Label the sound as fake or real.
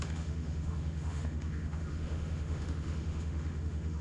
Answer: fake